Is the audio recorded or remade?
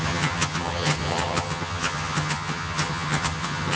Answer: remade